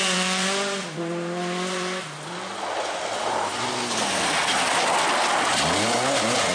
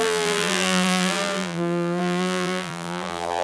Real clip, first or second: first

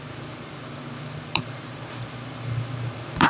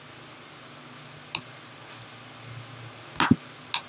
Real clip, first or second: second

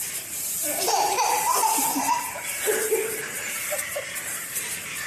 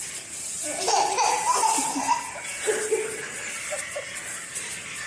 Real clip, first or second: second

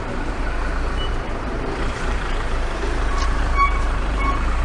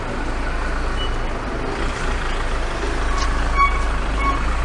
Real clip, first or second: second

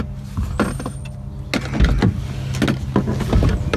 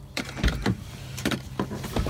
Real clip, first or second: first